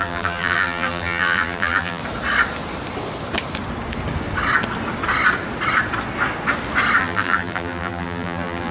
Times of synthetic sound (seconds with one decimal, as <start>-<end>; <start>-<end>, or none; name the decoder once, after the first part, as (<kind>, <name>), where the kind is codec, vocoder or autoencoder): 0.0-2.0 (vocoder, BigVGAN v2); 7.0-8.7